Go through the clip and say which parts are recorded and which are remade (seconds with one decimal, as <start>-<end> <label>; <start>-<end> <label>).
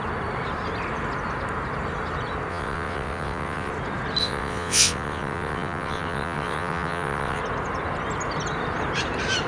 0.0-2.5 recorded; 2.5-3.7 remade; 3.7-4.2 recorded; 4.2-7.4 remade; 7.4-9.5 recorded